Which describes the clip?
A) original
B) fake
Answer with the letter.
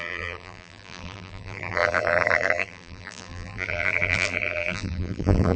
B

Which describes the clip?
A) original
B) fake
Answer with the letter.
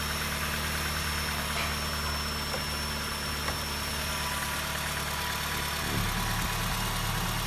A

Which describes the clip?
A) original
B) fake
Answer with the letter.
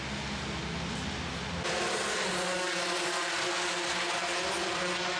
A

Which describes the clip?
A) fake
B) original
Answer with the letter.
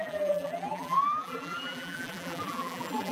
A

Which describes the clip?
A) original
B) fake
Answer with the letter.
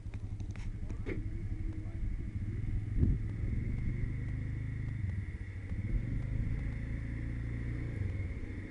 A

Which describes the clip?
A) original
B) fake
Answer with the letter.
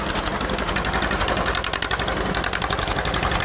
A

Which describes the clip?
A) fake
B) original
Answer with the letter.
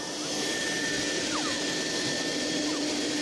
A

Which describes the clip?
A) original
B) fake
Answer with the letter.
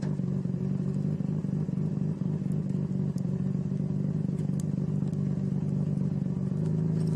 A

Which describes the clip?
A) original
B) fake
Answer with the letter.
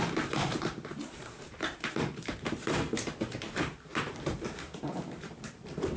B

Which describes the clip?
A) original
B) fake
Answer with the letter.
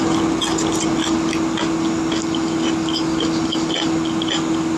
A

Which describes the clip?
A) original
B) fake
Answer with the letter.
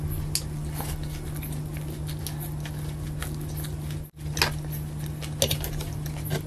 A